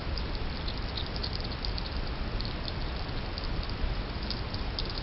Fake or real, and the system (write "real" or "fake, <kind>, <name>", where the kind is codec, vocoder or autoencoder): real